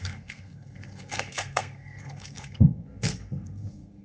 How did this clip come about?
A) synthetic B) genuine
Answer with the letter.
A